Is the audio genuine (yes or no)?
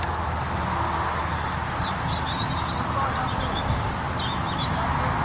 yes